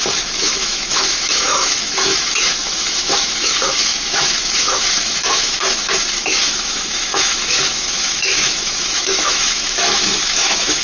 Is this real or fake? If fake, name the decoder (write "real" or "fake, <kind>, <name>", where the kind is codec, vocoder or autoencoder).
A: fake, autoencoder, DAC-VAE